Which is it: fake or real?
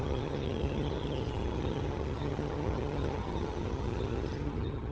fake